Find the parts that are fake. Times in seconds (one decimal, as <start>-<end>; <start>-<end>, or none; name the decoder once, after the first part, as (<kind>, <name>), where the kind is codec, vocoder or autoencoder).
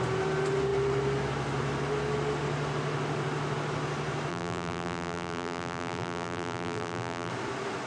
4.3-7.3 (vocoder, BigVGAN v2)